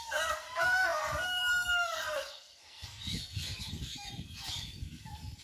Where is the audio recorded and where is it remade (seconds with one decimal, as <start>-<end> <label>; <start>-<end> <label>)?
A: 0.0-5.4 remade